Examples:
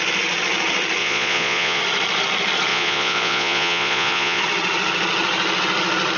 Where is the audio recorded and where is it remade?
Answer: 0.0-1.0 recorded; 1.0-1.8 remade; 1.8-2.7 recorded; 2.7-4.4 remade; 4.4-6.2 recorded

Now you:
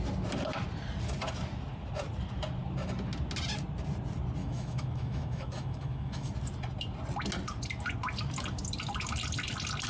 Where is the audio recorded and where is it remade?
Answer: 0.0-4.4 recorded; 4.4-6.3 remade; 6.3-9.9 recorded

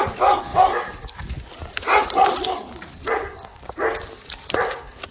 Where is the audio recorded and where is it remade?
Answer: 0.0-5.1 recorded

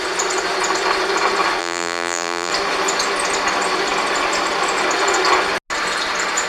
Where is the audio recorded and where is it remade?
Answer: 0.0-1.6 recorded; 1.6-2.5 remade; 2.5-6.5 recorded

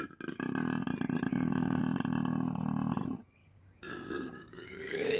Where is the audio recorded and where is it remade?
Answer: 0.0-1.3 recorded; 1.3-1.8 remade; 1.8-3.4 recorded; 3.4-5.2 remade

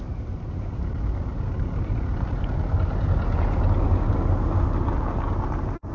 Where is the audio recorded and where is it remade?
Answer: 0.0-1.3 recorded; 1.3-2.6 remade; 2.6-5.9 recorded

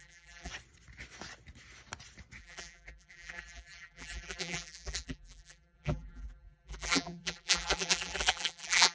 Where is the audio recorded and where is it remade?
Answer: 0.0-0.5 remade; 0.5-2.4 recorded; 2.4-8.9 remade